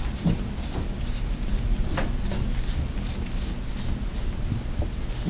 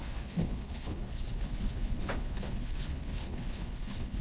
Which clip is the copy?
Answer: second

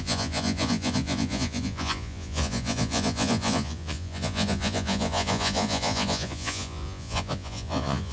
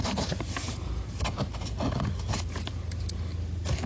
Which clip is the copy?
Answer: first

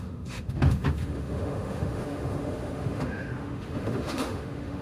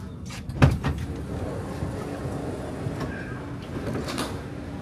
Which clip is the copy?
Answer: first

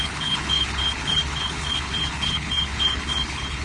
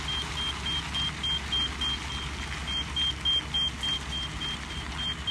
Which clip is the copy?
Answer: first